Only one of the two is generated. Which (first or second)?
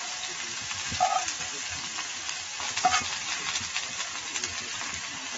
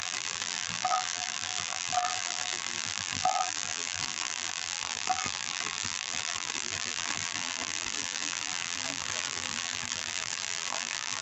second